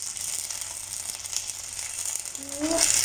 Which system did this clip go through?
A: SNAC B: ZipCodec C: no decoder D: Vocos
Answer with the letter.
C